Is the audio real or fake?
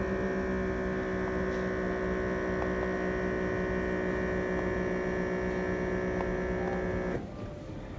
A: real